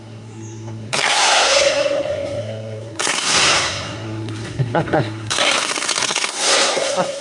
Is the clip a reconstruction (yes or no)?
yes